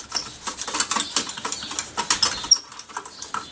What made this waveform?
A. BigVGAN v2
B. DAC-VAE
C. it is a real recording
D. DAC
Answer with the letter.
C